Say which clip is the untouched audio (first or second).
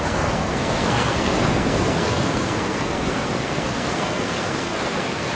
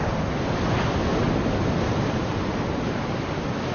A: second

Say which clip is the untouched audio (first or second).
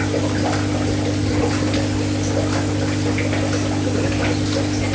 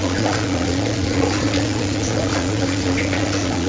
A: first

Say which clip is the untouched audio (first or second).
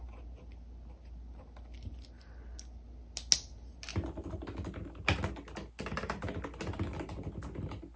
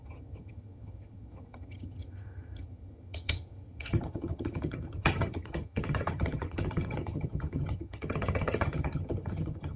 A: first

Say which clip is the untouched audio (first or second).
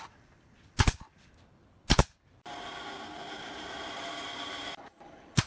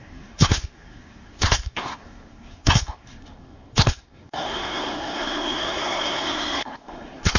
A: first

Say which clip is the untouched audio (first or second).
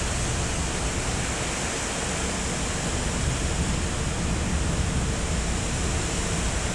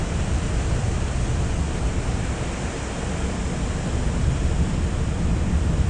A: first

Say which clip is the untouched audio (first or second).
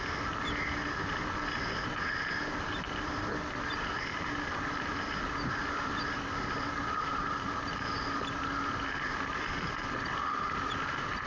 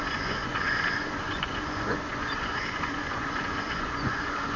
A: first